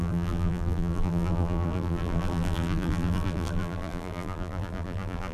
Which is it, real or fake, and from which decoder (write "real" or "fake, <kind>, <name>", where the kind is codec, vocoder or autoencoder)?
fake, vocoder, BigVGAN v2